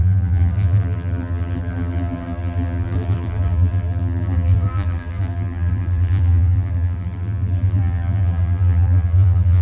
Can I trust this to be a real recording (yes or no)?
no